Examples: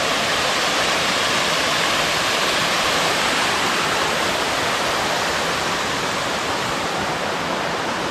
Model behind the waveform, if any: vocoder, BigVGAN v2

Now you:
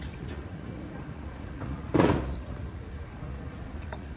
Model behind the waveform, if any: vocoder, Vocos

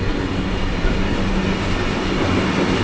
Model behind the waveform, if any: none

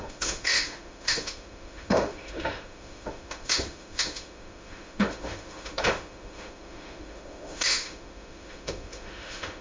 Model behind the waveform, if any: autoencoder, DAC-VAE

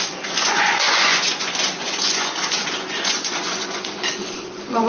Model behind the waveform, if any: vocoder, Vocos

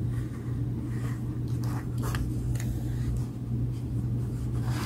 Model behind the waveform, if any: none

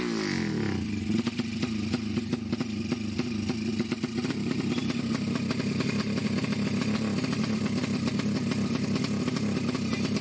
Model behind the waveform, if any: none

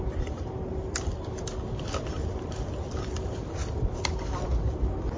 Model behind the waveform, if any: none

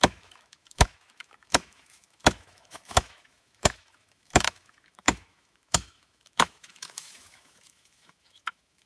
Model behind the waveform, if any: autoencoder, DAC-VAE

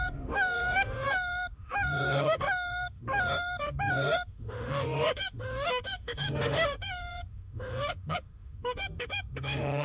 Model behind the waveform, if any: autoencoder, DAC-VAE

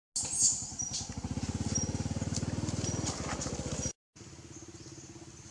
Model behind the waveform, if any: none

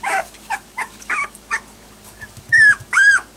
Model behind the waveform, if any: codec, DAC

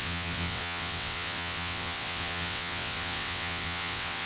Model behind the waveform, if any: vocoder, WaveNeXt